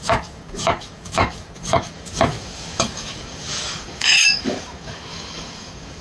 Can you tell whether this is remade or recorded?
remade